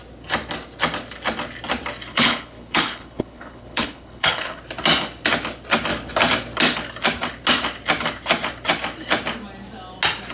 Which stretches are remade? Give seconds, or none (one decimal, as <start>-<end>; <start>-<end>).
2.1-4.6